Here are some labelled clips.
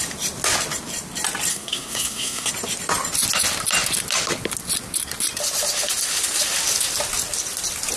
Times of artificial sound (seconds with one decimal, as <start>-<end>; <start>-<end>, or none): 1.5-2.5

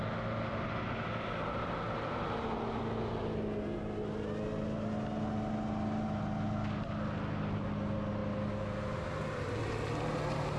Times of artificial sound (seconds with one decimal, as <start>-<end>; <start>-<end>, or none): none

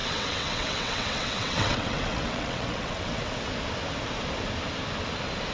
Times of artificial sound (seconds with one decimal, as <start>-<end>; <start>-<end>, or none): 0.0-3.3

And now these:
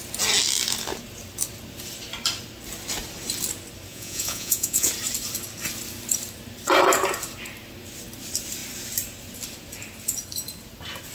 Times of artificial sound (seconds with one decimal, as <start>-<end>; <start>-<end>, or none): 3.9-4.9